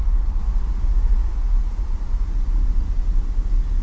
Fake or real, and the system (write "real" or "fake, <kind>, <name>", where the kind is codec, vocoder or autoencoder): real